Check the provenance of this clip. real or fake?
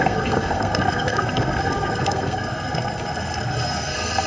fake